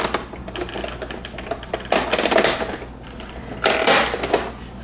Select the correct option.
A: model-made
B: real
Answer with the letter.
B